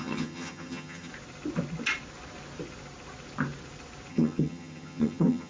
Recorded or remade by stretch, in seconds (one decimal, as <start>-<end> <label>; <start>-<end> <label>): 0.0-1.1 remade; 1.1-4.1 recorded; 4.1-5.5 remade

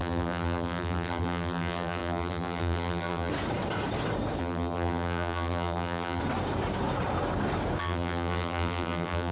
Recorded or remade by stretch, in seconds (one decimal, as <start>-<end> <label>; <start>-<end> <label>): 0.0-3.3 remade; 3.3-4.4 recorded; 4.4-6.2 remade; 6.2-7.8 recorded; 7.8-9.3 remade

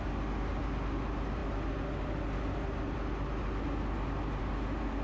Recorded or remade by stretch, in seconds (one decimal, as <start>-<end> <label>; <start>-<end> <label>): 0.0-5.0 recorded